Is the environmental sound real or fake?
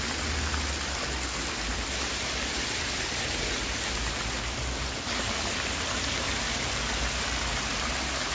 real